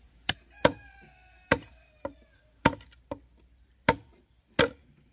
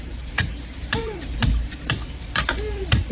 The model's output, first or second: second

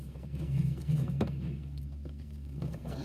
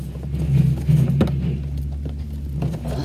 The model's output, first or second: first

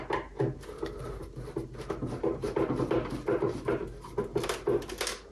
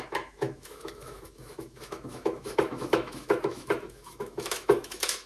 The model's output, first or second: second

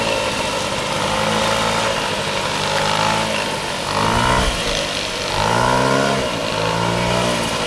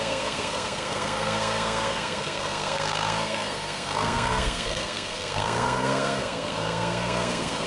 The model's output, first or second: second